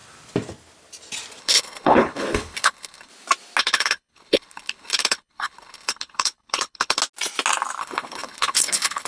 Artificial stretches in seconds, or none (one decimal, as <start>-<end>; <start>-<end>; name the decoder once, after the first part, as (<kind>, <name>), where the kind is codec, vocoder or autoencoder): 1.4-3.1 (codec, HILCodec); 3.6-7.0; 7.8-9.1